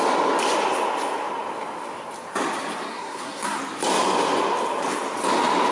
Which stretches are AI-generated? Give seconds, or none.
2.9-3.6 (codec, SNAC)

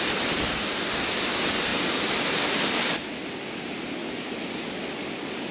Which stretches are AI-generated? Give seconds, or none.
1.7-3.2 (vocoder, BigVGAN v2); 4.0-4.7

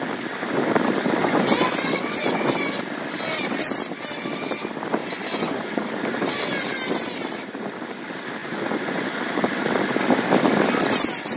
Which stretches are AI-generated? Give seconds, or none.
1.2-2.8 (vocoder, Vocos); 5.0-5.9; 8.4-9.2

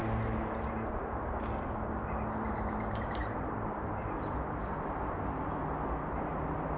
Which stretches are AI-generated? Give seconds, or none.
3.2-4.4 (vocoder, BigVGAN v2)

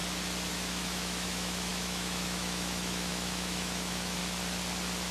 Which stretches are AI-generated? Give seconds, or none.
0.5-4.2 (autoencoder, DAC-VAE)

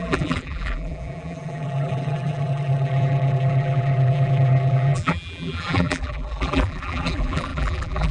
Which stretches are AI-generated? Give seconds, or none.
0.0-8.1 (vocoder, BigVGAN v2)

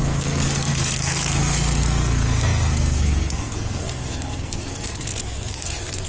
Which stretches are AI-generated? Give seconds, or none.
0.0-6.1 (codec, SNAC)

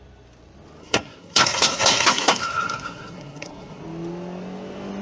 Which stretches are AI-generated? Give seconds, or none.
0.8-3.8 (codec, SNAC)